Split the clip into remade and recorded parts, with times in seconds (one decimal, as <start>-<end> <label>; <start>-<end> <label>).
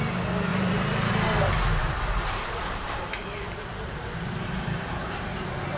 0.0-0.5 recorded; 0.5-1.1 remade; 1.1-1.8 recorded; 1.8-5.3 remade; 5.3-5.8 recorded